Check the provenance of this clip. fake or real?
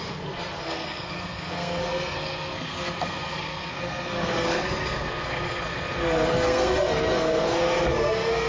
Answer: fake